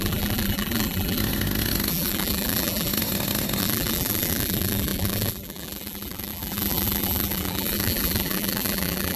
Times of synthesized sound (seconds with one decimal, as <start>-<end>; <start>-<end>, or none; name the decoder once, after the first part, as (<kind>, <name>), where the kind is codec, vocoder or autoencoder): 0.0-1.2 (vocoder, BigVGAN v2); 1.9-2.9; 3.6-9.2